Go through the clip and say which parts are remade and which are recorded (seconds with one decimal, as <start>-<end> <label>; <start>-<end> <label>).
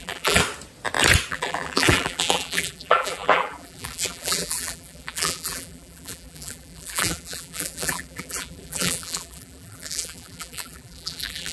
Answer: 0.0-0.4 remade; 0.4-1.3 recorded; 1.3-11.5 remade